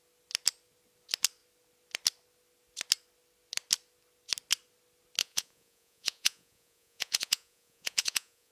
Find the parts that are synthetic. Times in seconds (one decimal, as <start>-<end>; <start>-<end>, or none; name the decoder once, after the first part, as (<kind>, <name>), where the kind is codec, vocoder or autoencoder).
5.2-8.5 (vocoder, Vocos)